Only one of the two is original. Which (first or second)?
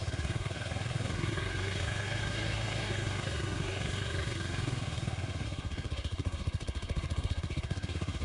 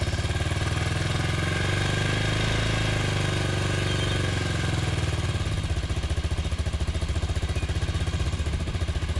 second